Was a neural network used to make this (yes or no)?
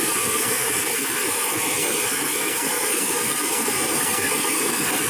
yes